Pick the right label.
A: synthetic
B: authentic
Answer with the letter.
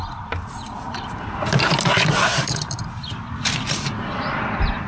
A